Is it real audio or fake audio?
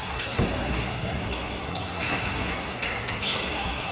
fake